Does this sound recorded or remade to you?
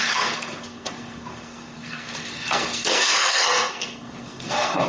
remade